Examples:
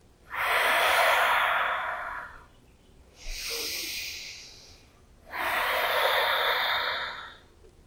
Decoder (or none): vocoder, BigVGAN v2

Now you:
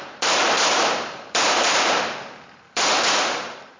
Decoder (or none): vocoder, BigVGAN v2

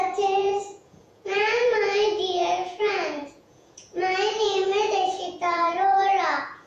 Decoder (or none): vocoder, Vocos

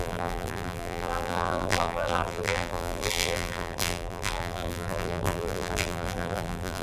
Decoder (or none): vocoder, BigVGAN v2